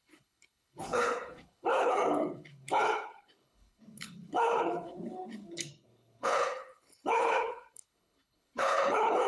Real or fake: fake